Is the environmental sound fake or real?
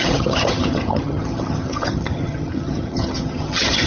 fake